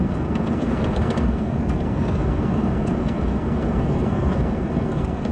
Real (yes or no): no